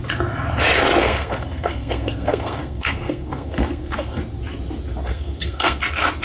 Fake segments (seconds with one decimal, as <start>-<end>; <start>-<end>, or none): 1.0-4.2; 5.1-5.8